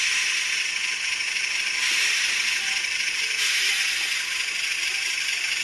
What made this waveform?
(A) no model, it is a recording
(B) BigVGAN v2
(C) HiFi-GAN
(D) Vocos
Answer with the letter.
A